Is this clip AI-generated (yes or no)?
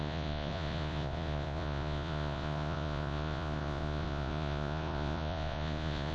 yes